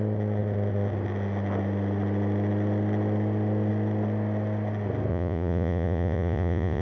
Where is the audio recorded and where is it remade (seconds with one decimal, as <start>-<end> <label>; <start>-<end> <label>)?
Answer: 0.0-5.1 recorded; 5.1-6.8 remade